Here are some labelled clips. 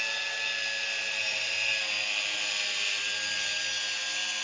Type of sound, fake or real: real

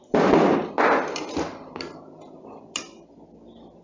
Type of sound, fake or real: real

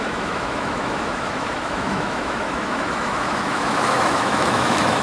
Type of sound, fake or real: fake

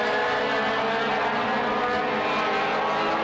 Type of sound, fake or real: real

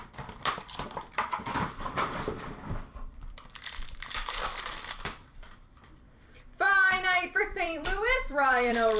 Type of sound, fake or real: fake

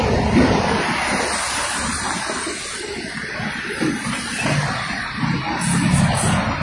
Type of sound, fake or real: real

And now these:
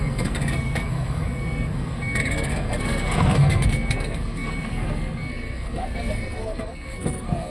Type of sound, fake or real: fake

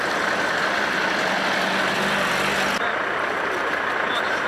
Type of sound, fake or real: real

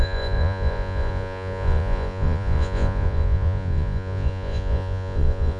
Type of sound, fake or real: fake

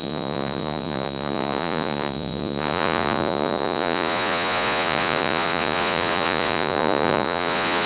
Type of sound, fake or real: fake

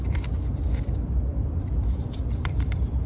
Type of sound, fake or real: fake